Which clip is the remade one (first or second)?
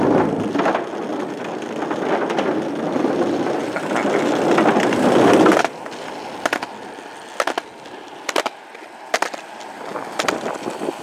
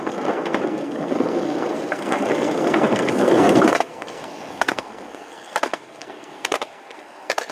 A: second